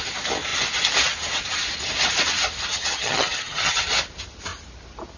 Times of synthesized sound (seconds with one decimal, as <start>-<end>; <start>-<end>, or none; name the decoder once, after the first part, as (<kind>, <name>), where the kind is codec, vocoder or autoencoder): 2.7-3.8 (vocoder, HiFi-GAN)